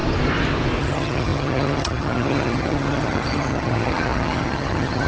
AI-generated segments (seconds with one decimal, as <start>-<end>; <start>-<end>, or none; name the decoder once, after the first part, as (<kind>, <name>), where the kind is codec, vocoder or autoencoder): 0.8-5.1 (vocoder, HiFi-GAN)